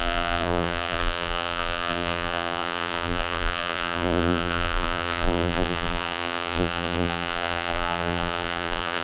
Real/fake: fake